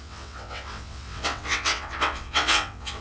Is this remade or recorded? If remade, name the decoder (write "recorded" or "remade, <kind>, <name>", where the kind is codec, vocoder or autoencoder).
remade, vocoder, WaveNeXt